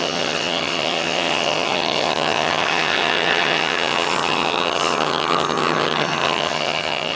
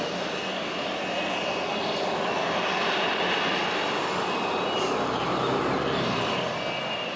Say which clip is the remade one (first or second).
first